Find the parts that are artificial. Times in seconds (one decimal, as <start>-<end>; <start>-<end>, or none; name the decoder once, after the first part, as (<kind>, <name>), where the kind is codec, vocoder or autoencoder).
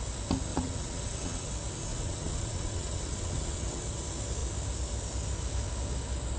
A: 0.5-1.5 (vocoder, WaveNeXt); 1.9-3.8